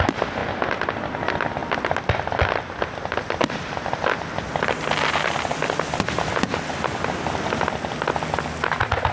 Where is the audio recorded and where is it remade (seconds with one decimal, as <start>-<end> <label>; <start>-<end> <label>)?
0.0-9.1 recorded